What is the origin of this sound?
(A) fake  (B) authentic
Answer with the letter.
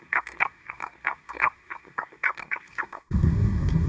A